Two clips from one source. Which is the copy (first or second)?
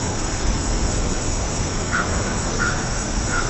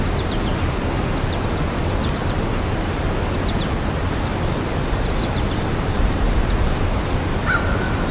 first